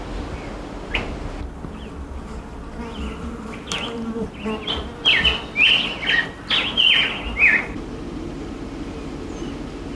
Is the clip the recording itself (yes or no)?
yes